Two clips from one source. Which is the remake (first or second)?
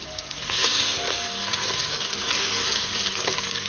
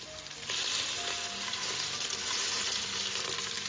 first